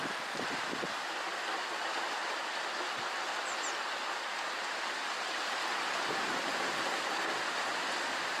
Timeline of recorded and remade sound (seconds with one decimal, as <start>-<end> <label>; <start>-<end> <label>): 0.0-8.4 recorded